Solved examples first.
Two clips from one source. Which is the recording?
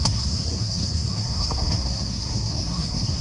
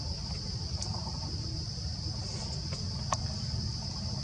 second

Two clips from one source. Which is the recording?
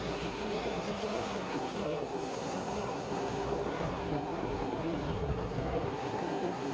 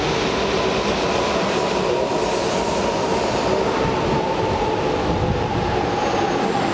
second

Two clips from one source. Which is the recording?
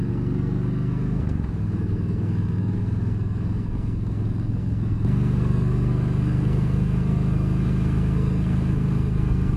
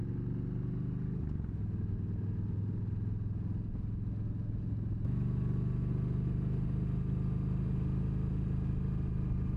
second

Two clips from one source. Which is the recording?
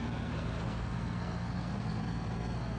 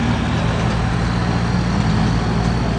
second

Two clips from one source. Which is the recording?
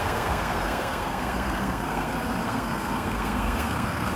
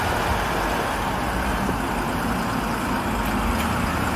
second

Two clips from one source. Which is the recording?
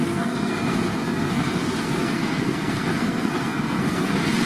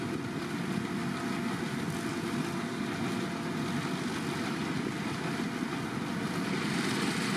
second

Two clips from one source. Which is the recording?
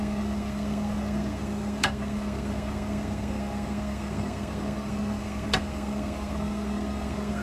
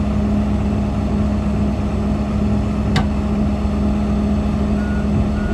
second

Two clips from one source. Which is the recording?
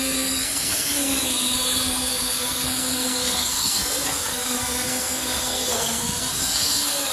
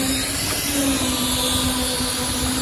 second